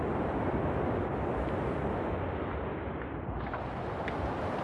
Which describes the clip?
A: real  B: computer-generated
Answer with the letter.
A